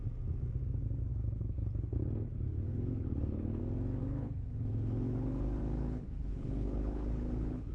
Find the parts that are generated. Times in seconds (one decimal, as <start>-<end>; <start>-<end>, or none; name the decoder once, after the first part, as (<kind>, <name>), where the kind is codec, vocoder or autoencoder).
1.1-3.6 (codec, HILCodec); 4.0-7.7